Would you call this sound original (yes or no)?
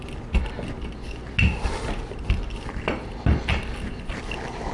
yes